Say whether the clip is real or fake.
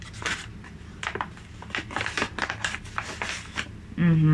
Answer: real